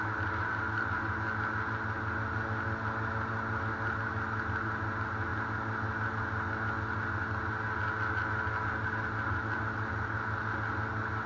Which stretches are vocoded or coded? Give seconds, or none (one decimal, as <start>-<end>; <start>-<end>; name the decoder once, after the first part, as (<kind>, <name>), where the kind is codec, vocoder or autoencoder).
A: none